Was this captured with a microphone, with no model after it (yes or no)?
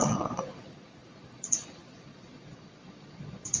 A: no